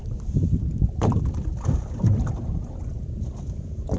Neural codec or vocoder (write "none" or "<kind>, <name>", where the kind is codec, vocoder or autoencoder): vocoder, BigVGAN v2